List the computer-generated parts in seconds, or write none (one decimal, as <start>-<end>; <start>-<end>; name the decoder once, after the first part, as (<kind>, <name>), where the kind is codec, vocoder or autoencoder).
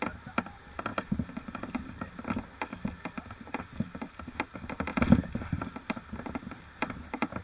none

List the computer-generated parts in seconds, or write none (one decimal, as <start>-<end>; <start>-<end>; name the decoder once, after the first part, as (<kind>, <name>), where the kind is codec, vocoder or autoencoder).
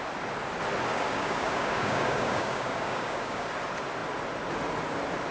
0.9-3.5 (codec, DAC)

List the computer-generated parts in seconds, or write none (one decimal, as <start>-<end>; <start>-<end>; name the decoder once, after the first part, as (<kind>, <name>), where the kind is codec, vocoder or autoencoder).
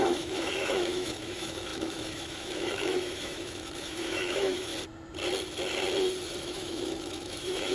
0.0-4.7 (autoencoder, DAC-VAE); 6.4-7.7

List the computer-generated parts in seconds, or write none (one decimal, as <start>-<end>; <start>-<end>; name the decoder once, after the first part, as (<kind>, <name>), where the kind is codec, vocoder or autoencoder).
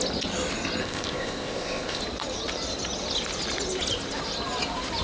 0.8-2.0 (codec, ZipCodec)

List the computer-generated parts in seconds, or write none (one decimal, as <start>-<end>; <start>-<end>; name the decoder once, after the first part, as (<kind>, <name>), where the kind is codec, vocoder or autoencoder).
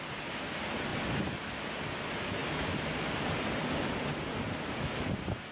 none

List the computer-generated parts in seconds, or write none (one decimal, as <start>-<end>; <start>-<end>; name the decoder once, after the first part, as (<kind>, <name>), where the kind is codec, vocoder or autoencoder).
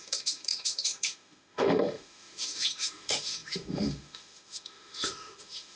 0.0-5.8 (autoencoder, DAC-VAE)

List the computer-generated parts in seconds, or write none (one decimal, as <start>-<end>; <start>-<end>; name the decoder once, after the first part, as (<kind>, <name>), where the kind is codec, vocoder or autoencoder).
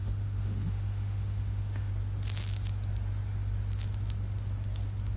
0.0-1.9 (autoencoder, DAC-VAE)